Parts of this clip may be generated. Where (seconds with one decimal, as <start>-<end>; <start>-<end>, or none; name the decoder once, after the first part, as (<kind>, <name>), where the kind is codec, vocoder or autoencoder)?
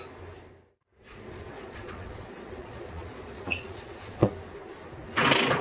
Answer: 0.9-4.3 (vocoder, Vocos)